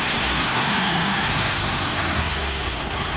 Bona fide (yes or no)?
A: no